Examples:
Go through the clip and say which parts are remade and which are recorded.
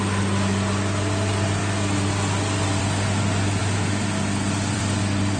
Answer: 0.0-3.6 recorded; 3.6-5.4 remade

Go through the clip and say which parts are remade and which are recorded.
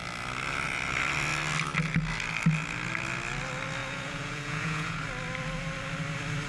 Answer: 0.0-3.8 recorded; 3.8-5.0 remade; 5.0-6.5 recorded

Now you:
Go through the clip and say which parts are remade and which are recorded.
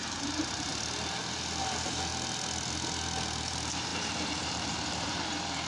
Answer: 0.0-0.7 remade; 0.7-1.6 recorded; 1.6-2.1 remade; 2.1-3.4 recorded; 3.4-5.7 remade